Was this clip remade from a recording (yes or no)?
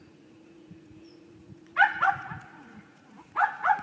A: yes